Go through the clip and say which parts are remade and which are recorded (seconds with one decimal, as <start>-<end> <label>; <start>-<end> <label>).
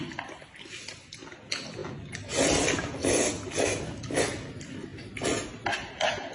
0.0-6.3 recorded